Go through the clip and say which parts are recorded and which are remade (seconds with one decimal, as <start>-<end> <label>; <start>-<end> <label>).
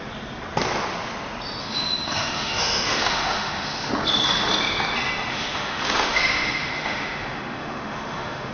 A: 0.0-1.6 recorded; 1.6-3.9 remade; 3.9-5.3 recorded; 5.3-8.5 remade